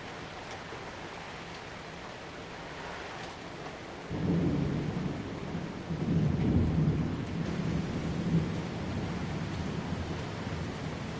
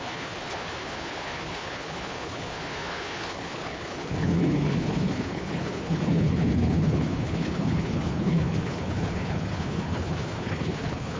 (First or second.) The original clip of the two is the first